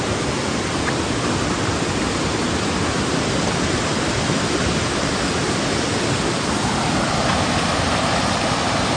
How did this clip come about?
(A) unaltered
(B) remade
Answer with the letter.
B